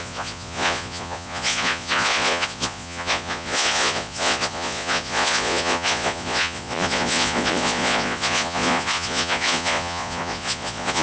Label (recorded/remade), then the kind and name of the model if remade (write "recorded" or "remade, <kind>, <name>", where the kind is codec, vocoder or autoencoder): remade, vocoder, Vocos